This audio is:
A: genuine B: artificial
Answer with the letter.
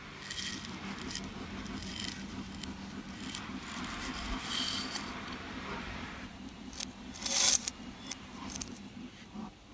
B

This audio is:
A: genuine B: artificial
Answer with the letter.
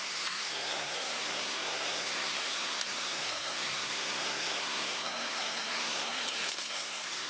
B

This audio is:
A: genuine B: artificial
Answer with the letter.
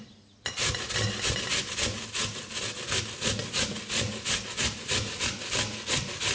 A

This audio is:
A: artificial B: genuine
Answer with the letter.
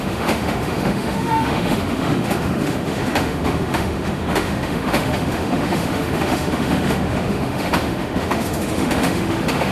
A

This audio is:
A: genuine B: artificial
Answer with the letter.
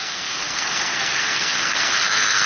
B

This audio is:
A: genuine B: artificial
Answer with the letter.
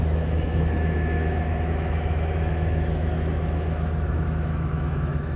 B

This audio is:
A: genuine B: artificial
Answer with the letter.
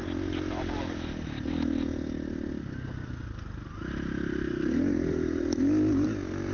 A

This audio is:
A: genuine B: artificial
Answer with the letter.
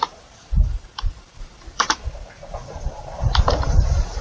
B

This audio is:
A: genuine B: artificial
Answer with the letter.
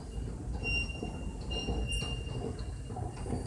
A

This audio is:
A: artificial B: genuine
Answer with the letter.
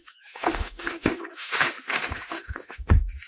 A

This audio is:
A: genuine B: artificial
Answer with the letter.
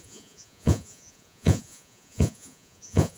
B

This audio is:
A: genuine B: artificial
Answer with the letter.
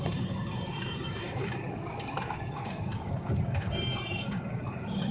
B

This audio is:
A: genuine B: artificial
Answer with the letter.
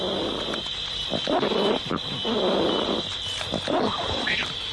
A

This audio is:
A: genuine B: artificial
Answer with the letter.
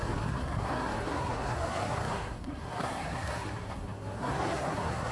B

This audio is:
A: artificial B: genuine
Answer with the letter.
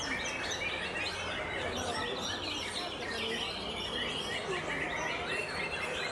B